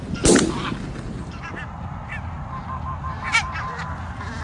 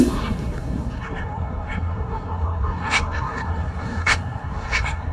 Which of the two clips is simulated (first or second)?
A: second